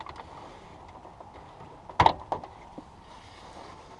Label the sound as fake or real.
real